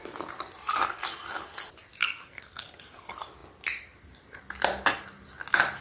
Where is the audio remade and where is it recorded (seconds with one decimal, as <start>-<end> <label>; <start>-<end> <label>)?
0.0-2.0 recorded; 2.0-2.8 remade; 2.8-5.8 recorded